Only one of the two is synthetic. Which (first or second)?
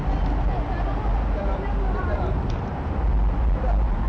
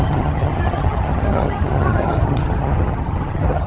second